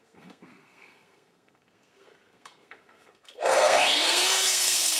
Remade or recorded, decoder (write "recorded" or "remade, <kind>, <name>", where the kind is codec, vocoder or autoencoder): remade, codec, SNAC